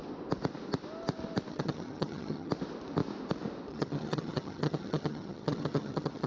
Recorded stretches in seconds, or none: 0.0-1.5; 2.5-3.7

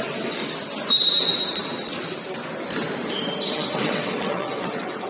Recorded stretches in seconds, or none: 0.4-3.5

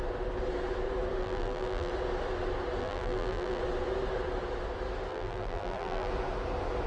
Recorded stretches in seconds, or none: 0.0-1.2; 1.9-2.8; 3.6-5.1; 6.1-6.9

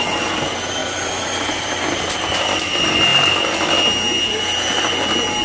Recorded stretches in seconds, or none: 0.0-0.8; 2.4-5.4

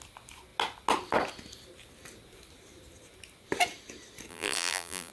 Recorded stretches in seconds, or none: 0.0-4.3

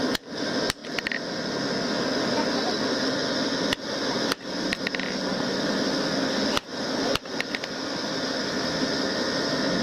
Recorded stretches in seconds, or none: 0.0-9.8

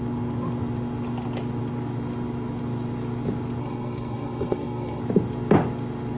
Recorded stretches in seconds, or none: 0.0-3.6; 5.0-6.2